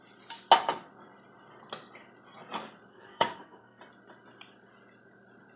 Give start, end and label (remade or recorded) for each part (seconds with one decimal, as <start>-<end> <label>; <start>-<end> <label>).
0.0-2.9 recorded; 2.9-3.8 remade; 3.8-5.6 recorded